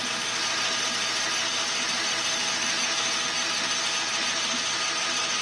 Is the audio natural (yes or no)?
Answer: yes